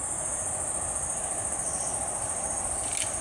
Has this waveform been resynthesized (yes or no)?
no